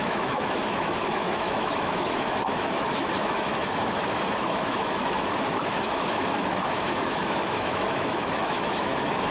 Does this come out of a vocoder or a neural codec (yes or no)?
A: yes